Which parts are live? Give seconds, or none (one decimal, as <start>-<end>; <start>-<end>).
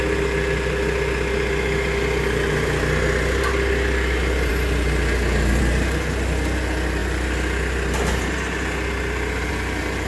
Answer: 0.0-10.1